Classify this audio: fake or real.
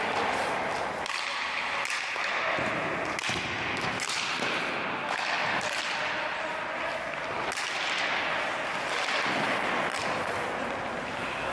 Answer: real